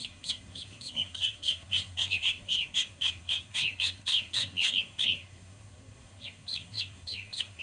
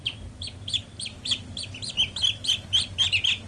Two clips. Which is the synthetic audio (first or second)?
first